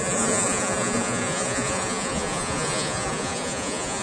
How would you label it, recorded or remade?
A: remade